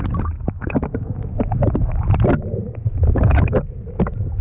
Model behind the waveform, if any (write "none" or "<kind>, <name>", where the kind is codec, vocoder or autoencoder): none